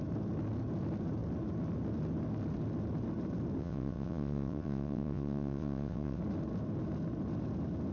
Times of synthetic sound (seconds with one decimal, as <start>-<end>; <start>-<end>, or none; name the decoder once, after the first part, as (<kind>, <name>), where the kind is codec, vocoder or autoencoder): 3.6-6.2 (vocoder, WaveNeXt)